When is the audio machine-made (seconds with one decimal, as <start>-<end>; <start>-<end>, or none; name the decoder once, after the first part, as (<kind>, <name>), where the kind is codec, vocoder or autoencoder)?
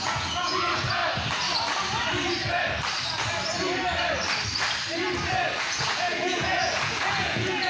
0.0-1.0 (vocoder, Vocos); 5.6-7.7